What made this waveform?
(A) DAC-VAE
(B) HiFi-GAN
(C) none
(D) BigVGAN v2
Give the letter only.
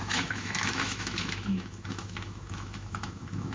A